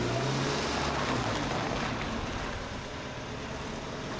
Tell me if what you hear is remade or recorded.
recorded